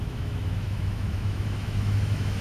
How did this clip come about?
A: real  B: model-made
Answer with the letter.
B